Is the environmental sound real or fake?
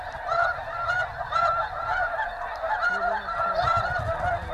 real